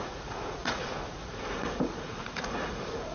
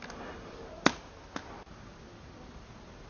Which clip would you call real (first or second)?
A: second